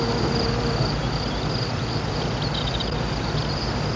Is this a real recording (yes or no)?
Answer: yes